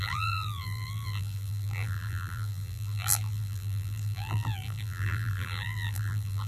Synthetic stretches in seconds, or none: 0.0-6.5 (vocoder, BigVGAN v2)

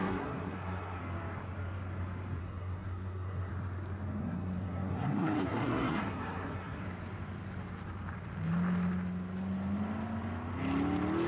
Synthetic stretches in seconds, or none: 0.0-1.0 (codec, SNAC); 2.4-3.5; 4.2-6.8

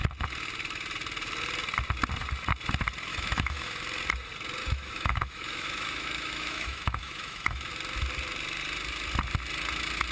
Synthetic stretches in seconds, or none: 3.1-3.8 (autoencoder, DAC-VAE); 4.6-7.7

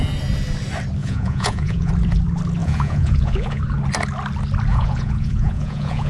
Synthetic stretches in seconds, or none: 1.0-1.9 (vocoder, Vocos); 2.6-3.6; 4.7-6.1

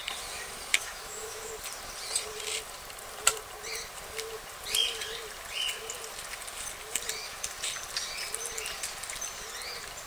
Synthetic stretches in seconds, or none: 0.7-1.5 (autoencoder, DAC-VAE)

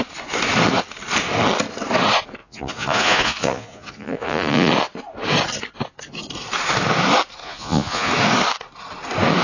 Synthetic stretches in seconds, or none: 2.4-4.7 (vocoder, Vocos); 7.4-8.1

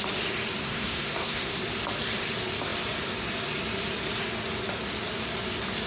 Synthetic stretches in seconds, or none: 0.6-1.6 (codec, SNAC)